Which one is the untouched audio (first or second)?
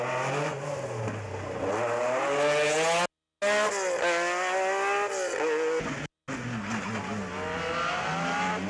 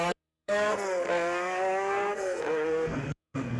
first